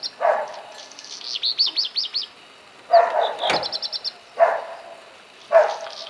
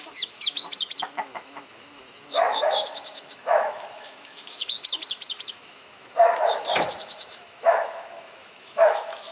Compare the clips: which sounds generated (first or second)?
second